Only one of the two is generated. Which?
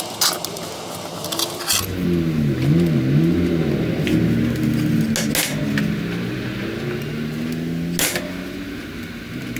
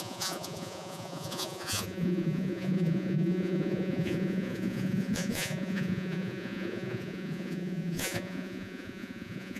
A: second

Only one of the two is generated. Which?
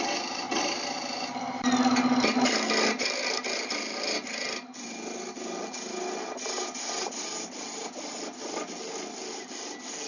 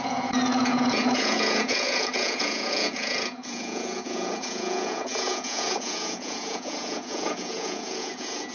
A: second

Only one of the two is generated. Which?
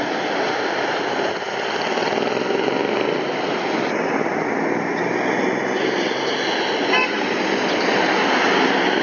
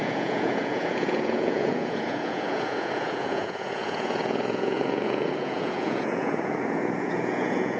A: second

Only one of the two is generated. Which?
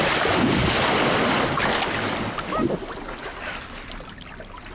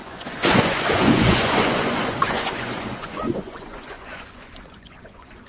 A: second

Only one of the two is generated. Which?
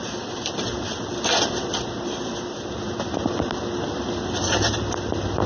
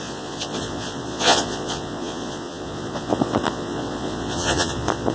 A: second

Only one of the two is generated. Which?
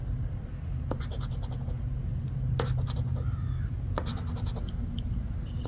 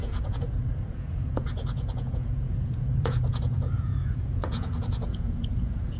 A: second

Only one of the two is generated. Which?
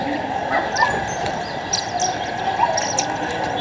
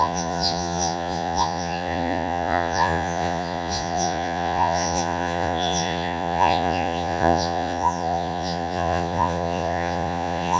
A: second